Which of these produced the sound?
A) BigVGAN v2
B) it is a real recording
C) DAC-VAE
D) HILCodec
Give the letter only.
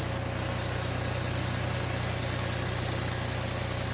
B